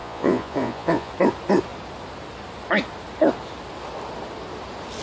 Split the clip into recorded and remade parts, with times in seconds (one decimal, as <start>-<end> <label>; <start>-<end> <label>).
0.0-1.1 remade; 1.1-5.0 recorded